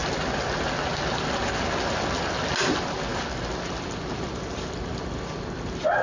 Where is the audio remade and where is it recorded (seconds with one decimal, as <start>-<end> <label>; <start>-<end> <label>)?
0.0-6.0 recorded